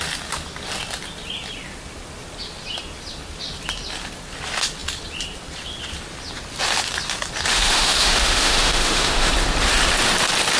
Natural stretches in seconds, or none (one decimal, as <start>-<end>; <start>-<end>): 0.0-7.5; 9.3-10.6